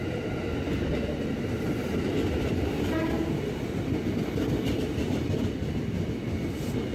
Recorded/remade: recorded